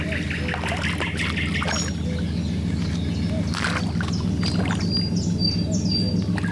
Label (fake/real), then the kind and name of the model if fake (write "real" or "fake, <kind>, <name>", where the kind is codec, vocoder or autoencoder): real